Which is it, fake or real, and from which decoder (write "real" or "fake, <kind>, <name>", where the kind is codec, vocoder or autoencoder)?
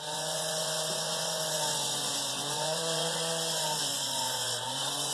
fake, vocoder, Vocos